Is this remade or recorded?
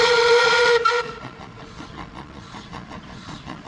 remade